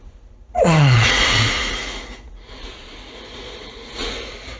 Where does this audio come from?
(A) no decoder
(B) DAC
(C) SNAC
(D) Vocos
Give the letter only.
D